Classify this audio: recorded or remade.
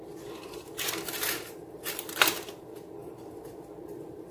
recorded